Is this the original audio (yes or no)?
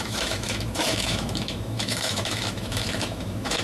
no